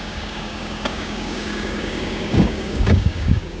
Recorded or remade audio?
remade